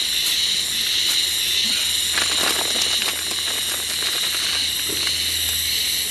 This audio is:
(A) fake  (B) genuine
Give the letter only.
B